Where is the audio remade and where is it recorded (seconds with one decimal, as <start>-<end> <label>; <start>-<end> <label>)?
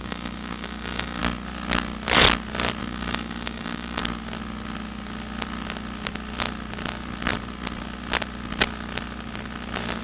0.0-1.2 remade; 1.2-2.8 recorded; 2.8-4.0 remade; 4.0-10.0 recorded